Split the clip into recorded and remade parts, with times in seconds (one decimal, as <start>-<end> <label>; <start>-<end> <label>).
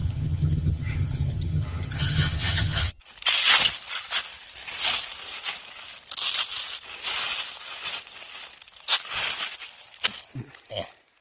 0.0-3.0 remade; 3.0-11.2 recorded